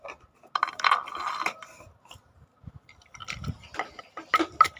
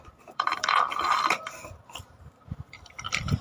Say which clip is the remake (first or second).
second